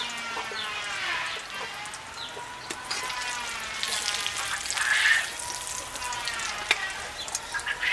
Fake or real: real